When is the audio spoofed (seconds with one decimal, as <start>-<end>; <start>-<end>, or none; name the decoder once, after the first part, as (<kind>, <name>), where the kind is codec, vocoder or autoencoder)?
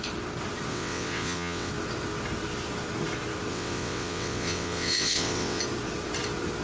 0.7-1.7 (vocoder, WaveNeXt); 3.5-5.6